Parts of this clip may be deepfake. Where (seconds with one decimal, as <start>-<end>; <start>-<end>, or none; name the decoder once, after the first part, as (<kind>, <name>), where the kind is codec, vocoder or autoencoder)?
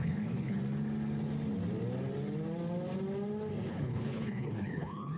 0.0-0.6 (codec, HILCodec); 3.7-5.2